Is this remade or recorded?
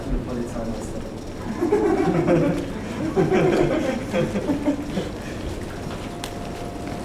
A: recorded